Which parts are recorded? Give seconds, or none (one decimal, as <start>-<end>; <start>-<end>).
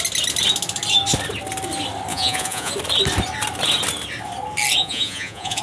0.0-2.1; 2.7-4.8